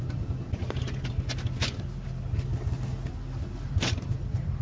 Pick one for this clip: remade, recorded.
recorded